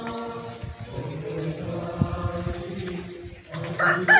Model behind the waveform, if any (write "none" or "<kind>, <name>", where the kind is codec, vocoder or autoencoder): none